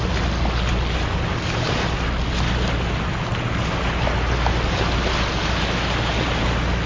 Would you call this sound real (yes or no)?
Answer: yes